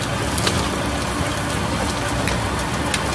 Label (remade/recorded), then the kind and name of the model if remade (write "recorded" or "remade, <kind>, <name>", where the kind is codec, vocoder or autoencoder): recorded